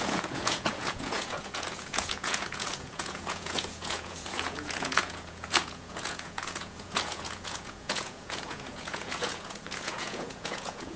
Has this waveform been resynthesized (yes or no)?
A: yes